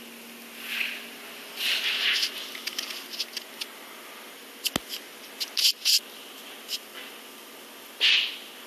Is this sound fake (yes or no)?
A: no